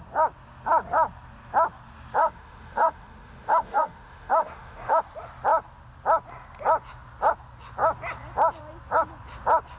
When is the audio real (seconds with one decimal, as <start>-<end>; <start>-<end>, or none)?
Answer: 0.0-2.2; 5.0-9.8